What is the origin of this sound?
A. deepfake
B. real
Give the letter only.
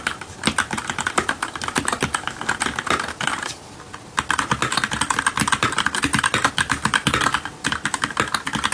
B